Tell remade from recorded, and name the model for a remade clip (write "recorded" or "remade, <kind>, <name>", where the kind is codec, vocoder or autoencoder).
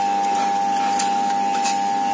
recorded